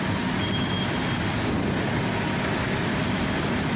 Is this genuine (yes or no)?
yes